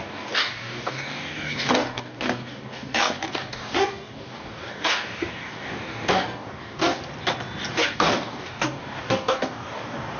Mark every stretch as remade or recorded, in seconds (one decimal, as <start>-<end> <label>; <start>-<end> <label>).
0.0-7.0 remade; 7.0-7.7 recorded; 7.7-10.2 remade